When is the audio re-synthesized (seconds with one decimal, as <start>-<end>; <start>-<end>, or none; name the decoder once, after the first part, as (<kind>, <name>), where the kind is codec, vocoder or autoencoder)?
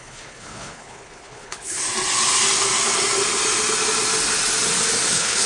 0.0-1.8 (codec, HILCodec); 5.1-5.5